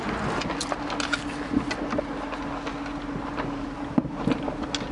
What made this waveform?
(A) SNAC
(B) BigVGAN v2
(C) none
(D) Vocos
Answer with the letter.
C